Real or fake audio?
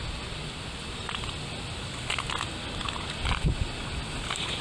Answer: real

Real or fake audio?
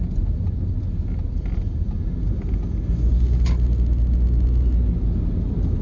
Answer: real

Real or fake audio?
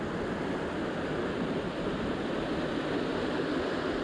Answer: real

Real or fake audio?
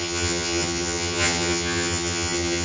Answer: fake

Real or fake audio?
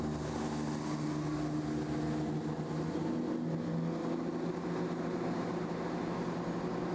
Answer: real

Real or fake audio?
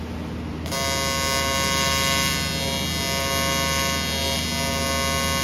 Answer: real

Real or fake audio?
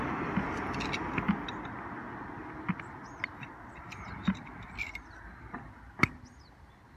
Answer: real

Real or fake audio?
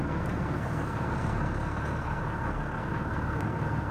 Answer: fake